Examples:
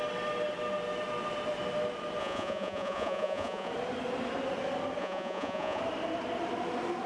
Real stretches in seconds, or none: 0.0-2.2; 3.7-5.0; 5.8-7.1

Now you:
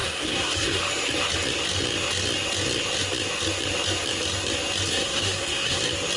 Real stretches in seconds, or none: 0.8-4.9; 5.8-6.2

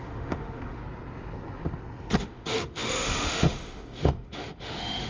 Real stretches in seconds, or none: 0.8-2.2

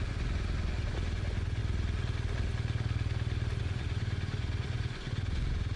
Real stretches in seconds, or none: 1.6-3.6

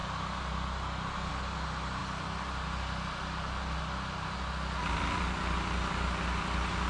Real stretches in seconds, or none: 0.0-6.9